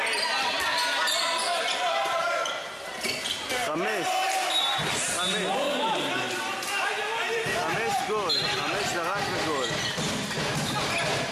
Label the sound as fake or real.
real